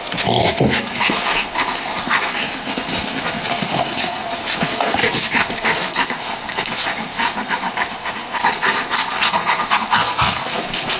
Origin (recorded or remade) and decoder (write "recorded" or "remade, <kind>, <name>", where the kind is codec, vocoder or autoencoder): remade, codec, SNAC